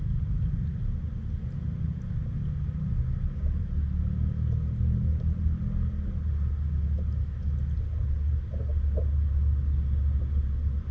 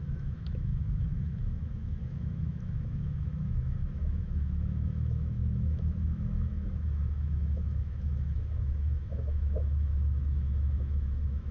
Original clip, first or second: first